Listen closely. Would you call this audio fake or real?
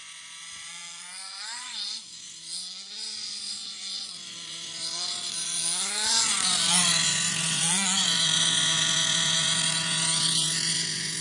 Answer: fake